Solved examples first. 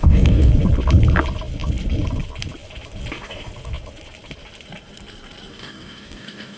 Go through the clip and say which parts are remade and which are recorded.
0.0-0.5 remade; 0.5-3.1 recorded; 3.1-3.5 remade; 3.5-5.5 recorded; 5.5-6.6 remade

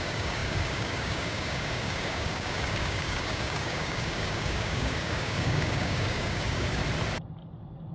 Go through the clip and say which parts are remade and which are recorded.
0.0-6.8 remade; 6.8-7.9 recorded

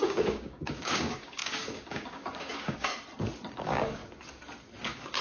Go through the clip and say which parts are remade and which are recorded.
0.0-2.9 remade; 2.9-3.5 recorded; 3.5-4.0 remade; 4.0-4.8 recorded; 4.8-5.2 remade

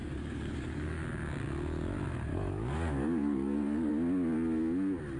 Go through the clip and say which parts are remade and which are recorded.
0.0-1.0 remade; 1.0-2.3 recorded; 2.3-3.9 remade; 3.9-5.2 recorded

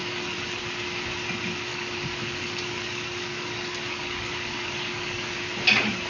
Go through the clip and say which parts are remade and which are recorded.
0.0-0.6 remade; 0.6-1.7 recorded; 1.7-5.4 remade; 5.4-6.1 recorded